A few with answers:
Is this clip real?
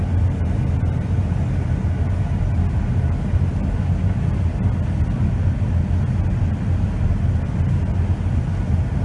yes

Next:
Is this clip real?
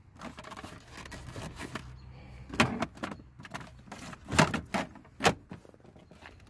yes